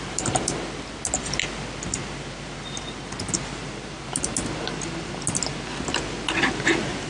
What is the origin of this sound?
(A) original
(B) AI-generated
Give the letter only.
A